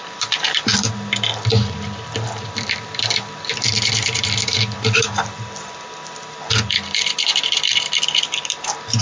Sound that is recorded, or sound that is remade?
remade